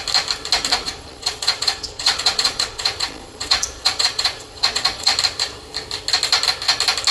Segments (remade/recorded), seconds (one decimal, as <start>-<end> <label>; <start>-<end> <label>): 0.0-0.8 recorded; 0.8-5.1 remade; 5.1-7.1 recorded